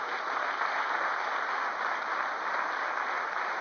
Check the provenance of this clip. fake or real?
real